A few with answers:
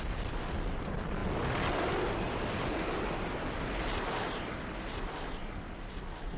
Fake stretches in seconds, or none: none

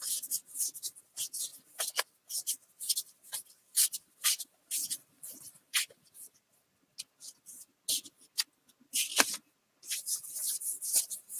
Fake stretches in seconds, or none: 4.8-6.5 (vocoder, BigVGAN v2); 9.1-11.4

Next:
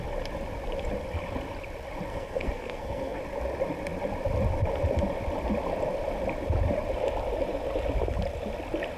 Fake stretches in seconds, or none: 2.1-3.2 (codec, SNAC)

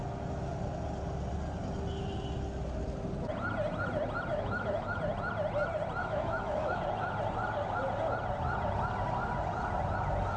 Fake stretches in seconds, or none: 4.3-5.0 (autoencoder, DAC-VAE); 6.0-6.8